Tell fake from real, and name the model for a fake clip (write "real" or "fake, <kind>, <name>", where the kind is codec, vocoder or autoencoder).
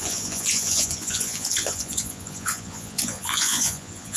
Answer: fake, vocoder, Vocos